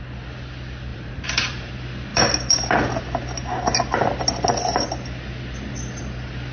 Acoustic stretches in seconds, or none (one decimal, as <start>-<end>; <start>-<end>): 0.0-0.9; 1.7-6.5